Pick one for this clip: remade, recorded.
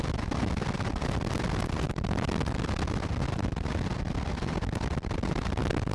recorded